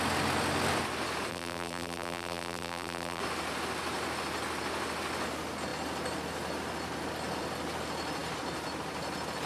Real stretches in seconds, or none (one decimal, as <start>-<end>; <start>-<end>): 0.0-1.3; 3.2-9.5